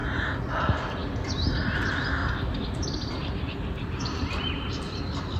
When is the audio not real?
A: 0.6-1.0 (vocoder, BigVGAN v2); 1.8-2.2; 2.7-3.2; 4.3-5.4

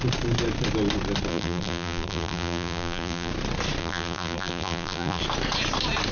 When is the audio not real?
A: 1.3-3.3 (vocoder, BigVGAN v2); 3.8-5.2

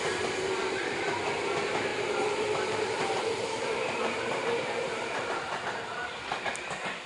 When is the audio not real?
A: 1.9-5.5 (vocoder, BigVGAN v2)